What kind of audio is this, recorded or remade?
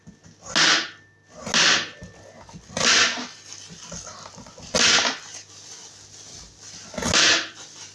recorded